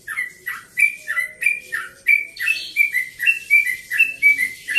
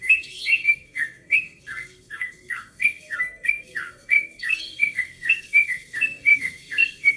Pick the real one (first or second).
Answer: first